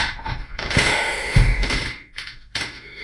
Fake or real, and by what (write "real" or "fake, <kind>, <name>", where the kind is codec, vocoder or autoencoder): fake, autoencoder, DAC-VAE